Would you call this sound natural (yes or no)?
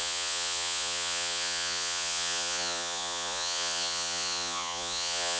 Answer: no